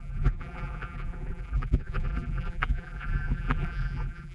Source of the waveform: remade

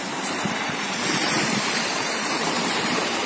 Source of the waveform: remade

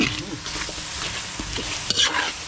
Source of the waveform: recorded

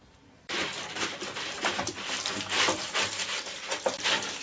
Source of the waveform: remade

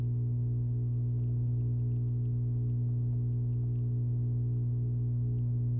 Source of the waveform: recorded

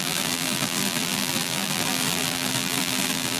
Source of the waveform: remade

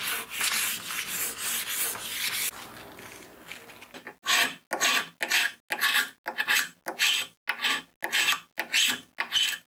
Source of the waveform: recorded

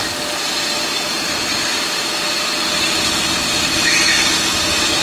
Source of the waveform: recorded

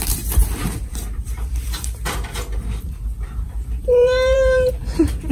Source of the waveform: remade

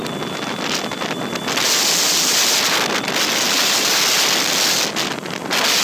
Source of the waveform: recorded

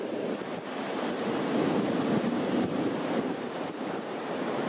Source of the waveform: remade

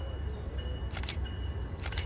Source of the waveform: recorded